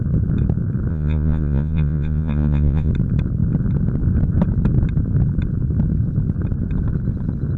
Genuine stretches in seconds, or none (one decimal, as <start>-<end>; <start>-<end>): 0.0-0.9; 2.9-7.6